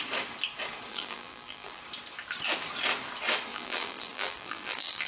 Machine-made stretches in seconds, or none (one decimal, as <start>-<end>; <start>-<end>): 0.9-1.8; 3.5-5.1